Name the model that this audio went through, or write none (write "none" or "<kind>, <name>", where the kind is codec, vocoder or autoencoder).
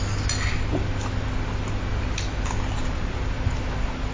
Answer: none